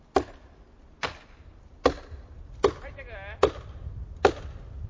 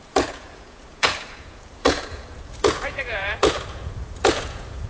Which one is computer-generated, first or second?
second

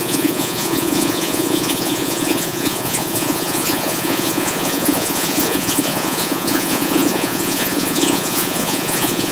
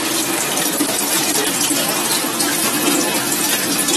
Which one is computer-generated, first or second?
first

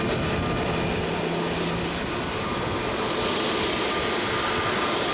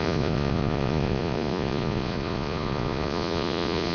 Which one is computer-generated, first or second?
second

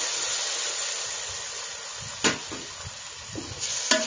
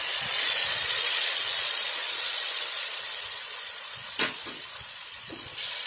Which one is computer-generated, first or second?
second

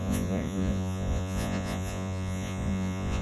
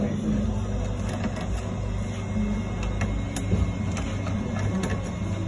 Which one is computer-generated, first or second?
first